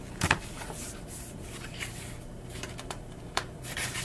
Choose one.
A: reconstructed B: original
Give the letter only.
A